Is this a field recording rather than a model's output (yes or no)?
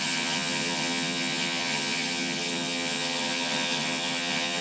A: no